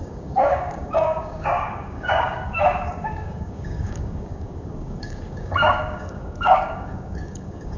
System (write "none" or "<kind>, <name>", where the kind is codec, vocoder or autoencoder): codec, DAC